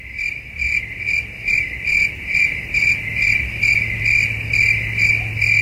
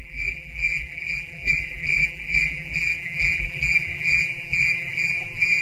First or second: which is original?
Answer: first